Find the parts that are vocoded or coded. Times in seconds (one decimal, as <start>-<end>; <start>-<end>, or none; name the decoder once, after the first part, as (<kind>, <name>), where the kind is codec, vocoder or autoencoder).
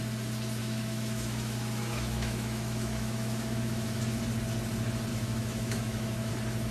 0.6-4.0 (autoencoder, DAC-VAE); 5.1-6.3